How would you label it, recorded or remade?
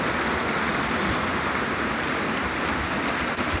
recorded